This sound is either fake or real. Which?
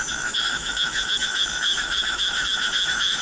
fake